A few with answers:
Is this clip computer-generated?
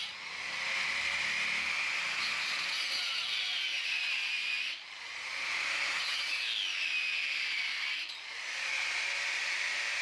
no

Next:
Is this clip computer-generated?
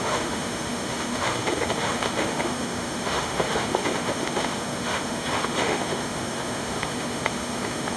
yes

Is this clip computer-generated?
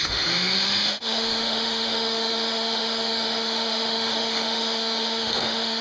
yes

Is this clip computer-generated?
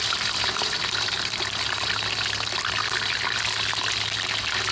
no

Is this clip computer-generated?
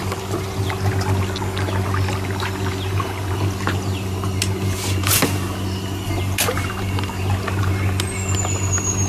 no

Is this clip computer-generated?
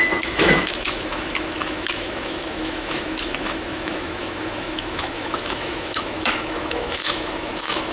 yes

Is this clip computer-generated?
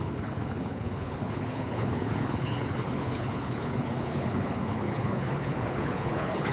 yes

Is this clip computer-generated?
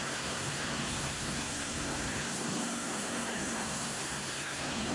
yes